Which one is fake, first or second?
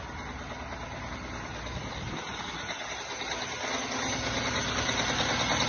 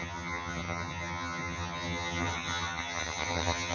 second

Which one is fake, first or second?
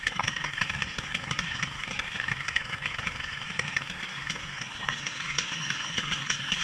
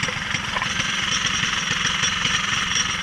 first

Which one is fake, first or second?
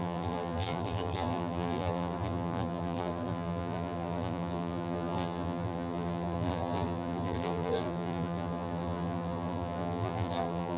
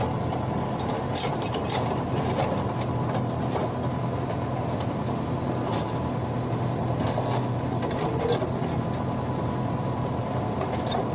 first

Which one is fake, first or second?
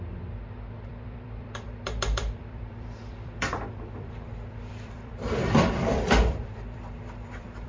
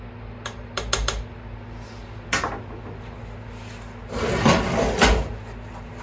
first